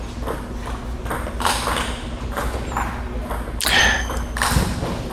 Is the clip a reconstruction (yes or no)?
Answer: no